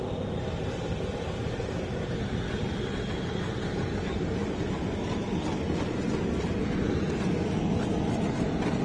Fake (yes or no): no